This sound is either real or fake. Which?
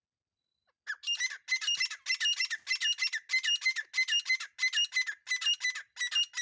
real